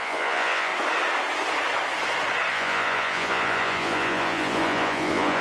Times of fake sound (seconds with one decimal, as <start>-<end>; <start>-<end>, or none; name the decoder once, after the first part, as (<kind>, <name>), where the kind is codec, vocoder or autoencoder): 0.0-0.7 (vocoder, Vocos); 2.5-5.4